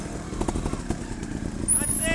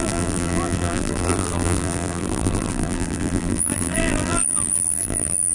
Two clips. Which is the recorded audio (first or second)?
first